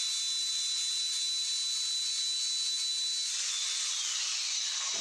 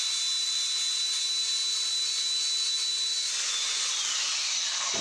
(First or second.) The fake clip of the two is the second